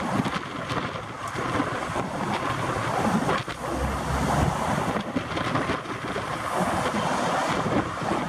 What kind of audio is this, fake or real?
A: real